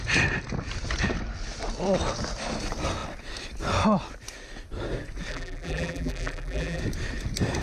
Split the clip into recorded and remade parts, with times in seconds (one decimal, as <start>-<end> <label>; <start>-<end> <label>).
0.0-5.3 recorded; 5.3-6.8 remade; 6.8-7.6 recorded